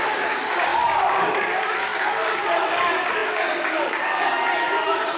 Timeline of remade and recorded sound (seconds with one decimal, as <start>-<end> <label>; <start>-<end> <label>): 0.0-5.2 remade